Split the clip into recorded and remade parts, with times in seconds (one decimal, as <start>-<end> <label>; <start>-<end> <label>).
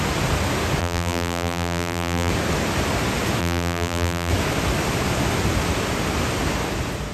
0.0-0.8 recorded; 0.8-2.3 remade; 2.3-3.4 recorded; 3.4-4.3 remade; 4.3-7.1 recorded